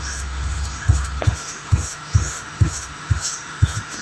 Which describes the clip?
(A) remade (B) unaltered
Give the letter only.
A